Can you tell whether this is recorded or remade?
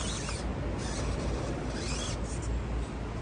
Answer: recorded